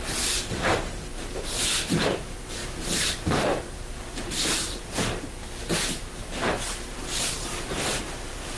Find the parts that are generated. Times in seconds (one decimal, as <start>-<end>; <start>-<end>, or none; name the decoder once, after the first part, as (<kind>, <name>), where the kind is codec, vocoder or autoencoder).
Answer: 0.0-8.6 (vocoder, BigVGAN v2)